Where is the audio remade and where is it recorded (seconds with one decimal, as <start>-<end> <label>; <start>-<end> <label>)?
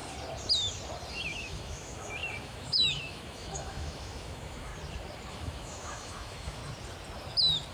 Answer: 0.0-1.1 recorded; 1.1-4.7 remade; 4.7-5.3 recorded; 5.3-6.6 remade; 6.6-7.7 recorded